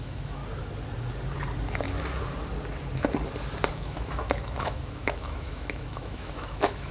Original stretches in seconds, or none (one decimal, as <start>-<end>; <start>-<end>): 0.4-3.7